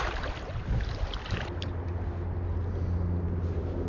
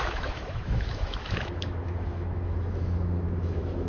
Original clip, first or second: first